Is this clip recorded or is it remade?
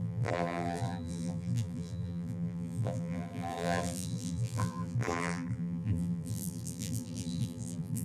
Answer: remade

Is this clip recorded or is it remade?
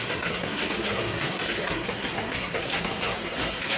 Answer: remade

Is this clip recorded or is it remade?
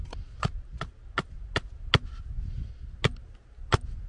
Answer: recorded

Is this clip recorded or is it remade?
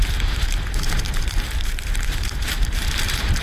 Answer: remade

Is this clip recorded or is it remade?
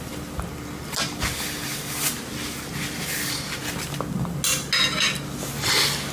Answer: recorded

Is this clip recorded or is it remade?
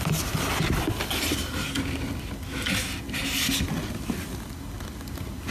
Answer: recorded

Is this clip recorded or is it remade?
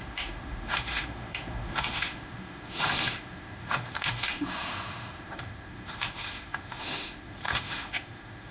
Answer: remade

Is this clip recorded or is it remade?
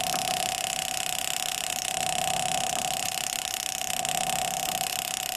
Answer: recorded